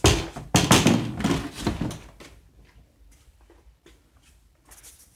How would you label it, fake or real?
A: real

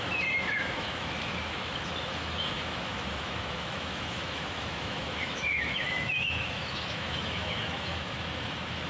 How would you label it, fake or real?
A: fake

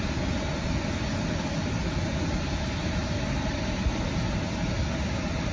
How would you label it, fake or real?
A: real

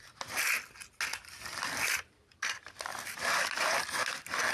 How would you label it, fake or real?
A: real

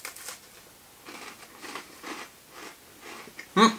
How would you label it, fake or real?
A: real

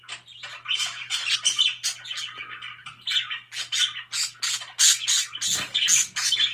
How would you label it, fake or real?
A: real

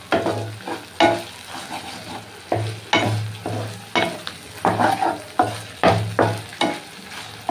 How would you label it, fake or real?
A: real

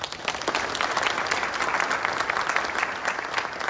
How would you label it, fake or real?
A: real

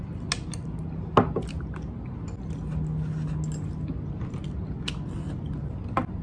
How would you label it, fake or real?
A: real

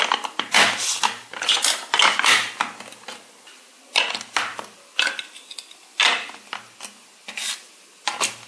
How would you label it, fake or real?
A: real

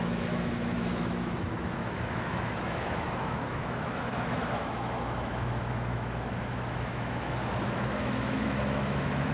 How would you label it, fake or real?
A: fake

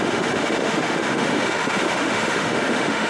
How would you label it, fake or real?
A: fake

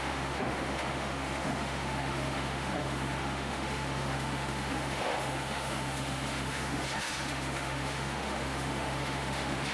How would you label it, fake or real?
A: fake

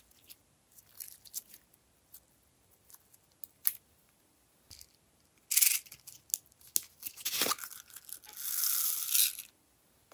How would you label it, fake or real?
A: real